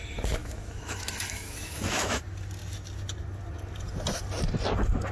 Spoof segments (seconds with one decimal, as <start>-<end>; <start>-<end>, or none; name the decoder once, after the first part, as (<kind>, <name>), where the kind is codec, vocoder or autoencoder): 0.4-2.2 (autoencoder, DAC-VAE)